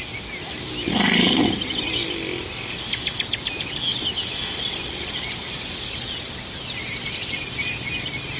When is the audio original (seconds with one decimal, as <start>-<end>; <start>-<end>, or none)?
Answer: 0.0-8.4